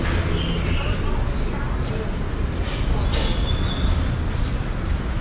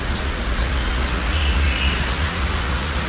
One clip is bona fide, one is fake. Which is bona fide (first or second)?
first